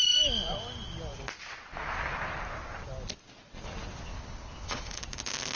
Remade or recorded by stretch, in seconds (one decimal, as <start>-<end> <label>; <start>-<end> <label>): 0.0-4.1 recorded; 4.1-5.0 remade; 5.0-5.6 recorded